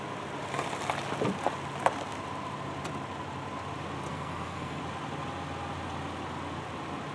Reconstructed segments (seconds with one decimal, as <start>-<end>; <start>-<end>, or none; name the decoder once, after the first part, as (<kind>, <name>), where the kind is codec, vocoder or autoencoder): 4.1-4.8 (codec, SNAC)